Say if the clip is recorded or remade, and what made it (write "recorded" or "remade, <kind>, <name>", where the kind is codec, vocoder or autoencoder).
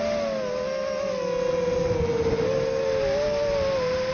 recorded